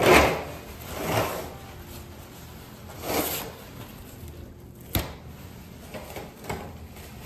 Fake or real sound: real